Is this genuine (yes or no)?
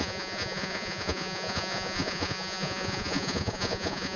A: no